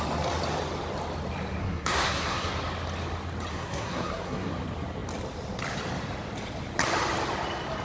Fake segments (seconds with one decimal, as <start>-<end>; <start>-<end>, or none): 1.6-2.5; 3.5-4.5